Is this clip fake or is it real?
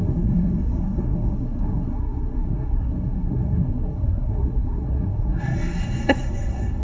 fake